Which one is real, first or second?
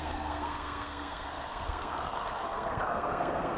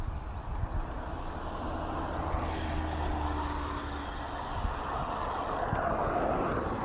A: second